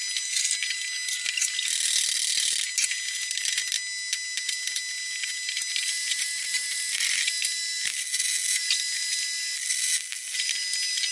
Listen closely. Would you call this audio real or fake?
real